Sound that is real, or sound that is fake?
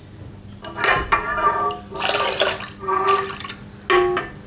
real